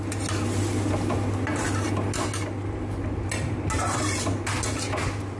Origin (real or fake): real